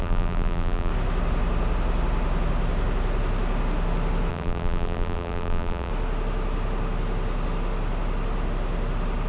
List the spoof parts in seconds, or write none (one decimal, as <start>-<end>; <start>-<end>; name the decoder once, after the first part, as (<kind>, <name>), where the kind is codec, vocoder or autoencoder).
0.0-0.9 (vocoder, BigVGAN v2); 4.3-5.9

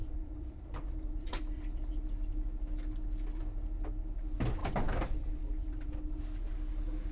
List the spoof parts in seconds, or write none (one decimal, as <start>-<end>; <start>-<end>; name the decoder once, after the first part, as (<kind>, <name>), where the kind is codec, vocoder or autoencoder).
0.0-1.9 (vocoder, BigVGAN v2); 4.6-6.2